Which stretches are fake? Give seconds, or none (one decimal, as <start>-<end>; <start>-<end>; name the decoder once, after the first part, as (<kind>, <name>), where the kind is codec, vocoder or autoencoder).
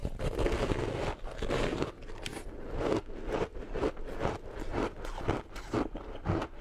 none